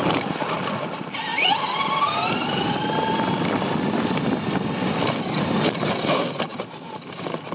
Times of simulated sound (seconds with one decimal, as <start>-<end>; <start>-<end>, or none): none